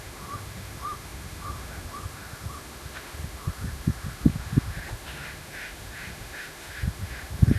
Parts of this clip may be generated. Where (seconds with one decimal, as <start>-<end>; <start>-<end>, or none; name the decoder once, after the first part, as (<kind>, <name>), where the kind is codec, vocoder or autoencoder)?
0.0-7.6 (autoencoder, DAC-VAE)